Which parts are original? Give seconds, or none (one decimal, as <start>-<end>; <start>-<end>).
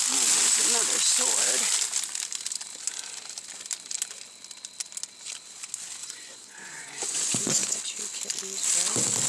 0.0-6.0; 7.8-9.3